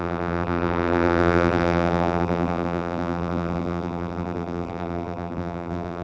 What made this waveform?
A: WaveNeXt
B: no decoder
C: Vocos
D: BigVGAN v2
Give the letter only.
D